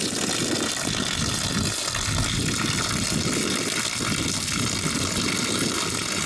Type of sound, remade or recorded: recorded